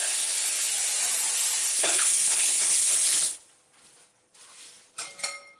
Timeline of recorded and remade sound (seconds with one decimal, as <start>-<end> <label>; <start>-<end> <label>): 0.0-0.7 remade; 0.7-1.6 recorded; 1.6-3.4 remade; 3.4-5.6 recorded